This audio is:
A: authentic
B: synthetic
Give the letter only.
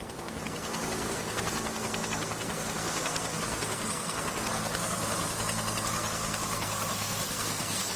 B